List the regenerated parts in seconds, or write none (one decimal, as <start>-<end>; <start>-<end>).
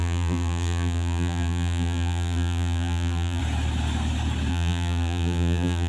0.0-3.4; 4.5-5.9